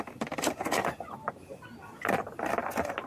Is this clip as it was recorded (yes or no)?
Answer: yes